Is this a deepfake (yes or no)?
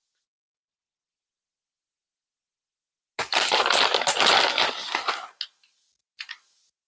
no